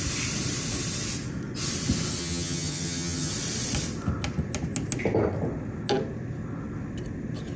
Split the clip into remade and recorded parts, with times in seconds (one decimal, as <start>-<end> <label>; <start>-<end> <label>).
0.0-2.2 recorded; 2.2-3.3 remade; 3.3-7.6 recorded

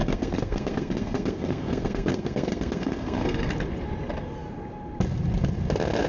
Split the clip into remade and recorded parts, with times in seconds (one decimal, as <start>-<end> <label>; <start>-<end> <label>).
0.0-3.5 remade; 3.5-6.1 recorded

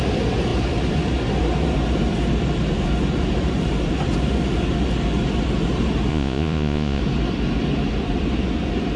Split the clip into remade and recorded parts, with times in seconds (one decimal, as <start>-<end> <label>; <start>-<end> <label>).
0.0-6.1 recorded; 6.1-7.0 remade; 7.0-9.0 recorded